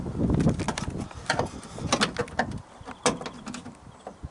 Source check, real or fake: real